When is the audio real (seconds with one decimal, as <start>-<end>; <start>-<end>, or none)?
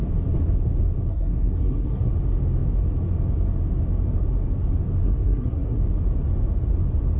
0.0-1.1; 2.1-5.0; 5.8-7.2